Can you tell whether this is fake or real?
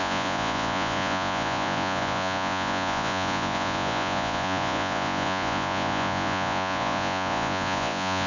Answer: fake